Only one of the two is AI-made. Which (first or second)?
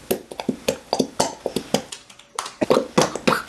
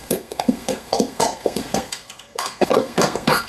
second